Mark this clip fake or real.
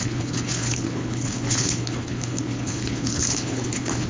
fake